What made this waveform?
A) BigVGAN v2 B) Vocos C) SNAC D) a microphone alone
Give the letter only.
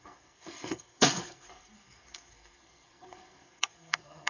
C